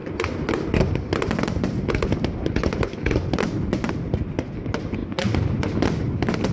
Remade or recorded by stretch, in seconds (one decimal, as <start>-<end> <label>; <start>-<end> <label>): 0.0-6.5 recorded